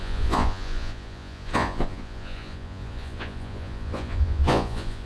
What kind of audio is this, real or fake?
fake